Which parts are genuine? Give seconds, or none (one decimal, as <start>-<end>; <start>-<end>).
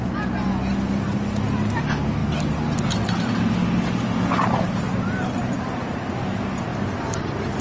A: 0.0-7.6